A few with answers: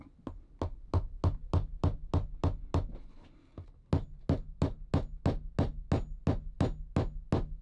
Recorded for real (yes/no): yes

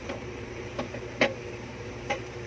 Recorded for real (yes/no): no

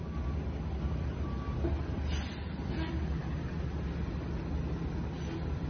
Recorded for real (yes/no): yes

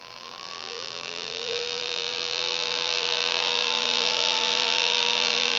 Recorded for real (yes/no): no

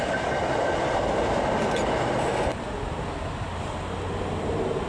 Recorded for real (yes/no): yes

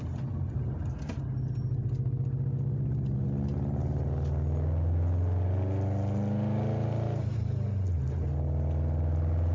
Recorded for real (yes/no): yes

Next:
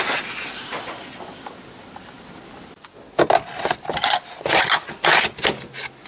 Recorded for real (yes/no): yes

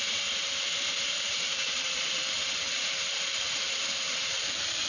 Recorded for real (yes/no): no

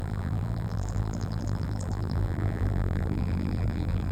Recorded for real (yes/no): no